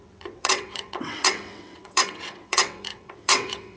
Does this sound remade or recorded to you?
remade